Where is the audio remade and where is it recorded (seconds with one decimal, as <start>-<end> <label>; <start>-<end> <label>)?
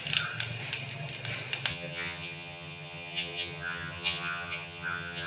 0.0-1.7 recorded; 1.7-5.3 remade